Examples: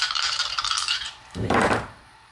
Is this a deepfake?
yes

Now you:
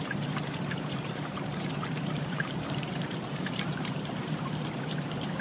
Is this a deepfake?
yes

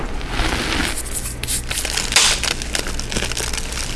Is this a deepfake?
no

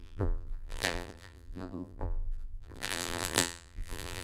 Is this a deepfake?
yes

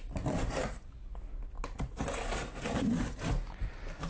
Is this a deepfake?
no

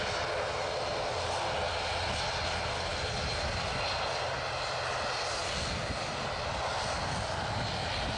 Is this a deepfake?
no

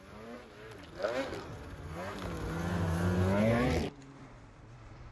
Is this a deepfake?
no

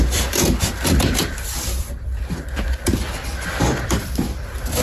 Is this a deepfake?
yes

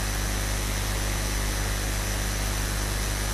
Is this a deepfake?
no